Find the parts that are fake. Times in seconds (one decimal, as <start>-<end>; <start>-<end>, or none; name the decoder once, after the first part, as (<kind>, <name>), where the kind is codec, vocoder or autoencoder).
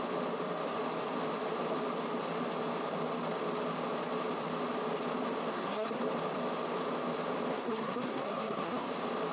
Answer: 5.5-6.0 (codec, SNAC); 7.5-8.9